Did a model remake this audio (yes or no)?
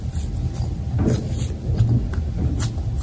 no